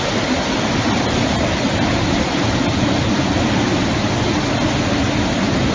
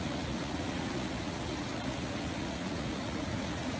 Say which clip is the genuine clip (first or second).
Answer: first